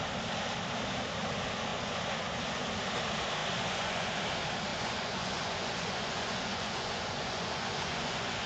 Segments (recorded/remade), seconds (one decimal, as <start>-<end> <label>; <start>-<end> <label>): 0.0-1.7 recorded; 1.7-2.7 remade; 2.7-3.4 recorded; 3.4-4.2 remade; 4.2-4.7 recorded; 4.7-8.5 remade